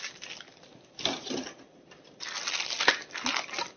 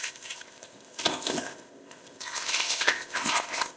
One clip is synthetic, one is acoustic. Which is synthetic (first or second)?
second